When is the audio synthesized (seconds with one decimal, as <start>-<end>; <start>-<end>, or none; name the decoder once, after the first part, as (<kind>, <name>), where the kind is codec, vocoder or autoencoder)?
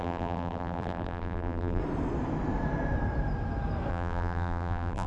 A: 0.0-1.8 (vocoder, BigVGAN v2); 3.9-5.1